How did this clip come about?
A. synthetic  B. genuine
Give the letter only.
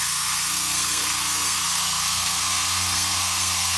A